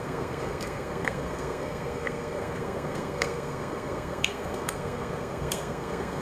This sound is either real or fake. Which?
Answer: fake